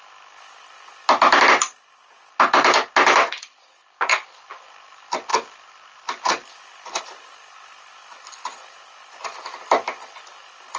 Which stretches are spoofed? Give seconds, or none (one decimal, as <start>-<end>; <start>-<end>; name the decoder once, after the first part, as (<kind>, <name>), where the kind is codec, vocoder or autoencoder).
none